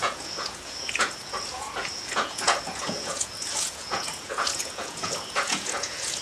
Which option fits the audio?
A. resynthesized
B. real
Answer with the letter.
A